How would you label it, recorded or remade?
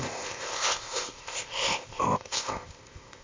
remade